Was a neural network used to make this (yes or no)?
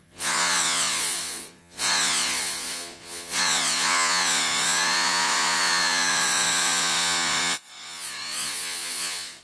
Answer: yes